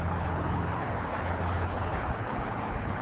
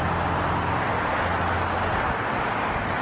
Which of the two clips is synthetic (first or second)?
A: first